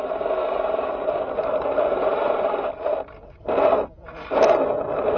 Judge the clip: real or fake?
real